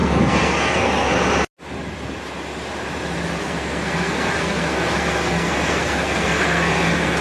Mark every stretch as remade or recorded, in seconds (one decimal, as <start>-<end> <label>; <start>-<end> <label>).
0.0-1.1 remade; 1.1-3.4 recorded; 3.4-7.2 remade